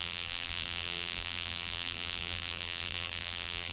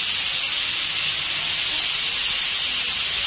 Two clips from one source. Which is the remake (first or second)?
first